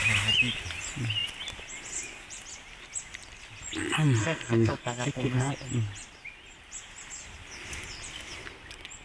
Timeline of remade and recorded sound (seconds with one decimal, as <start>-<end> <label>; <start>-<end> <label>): 0.0-4.2 recorded; 4.2-5.5 remade; 5.5-9.0 recorded